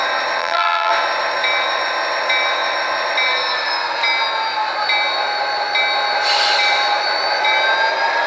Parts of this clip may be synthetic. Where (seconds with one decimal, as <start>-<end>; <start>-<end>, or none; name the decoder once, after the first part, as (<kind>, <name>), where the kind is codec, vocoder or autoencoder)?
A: 0.4-0.9 (vocoder, BigVGAN v2)

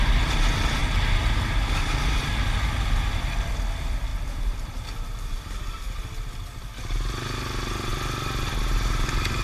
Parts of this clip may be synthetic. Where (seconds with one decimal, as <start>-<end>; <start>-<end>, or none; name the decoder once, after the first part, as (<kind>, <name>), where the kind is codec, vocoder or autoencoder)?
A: 4.1-4.8 (vocoder, BigVGAN v2); 7.9-8.6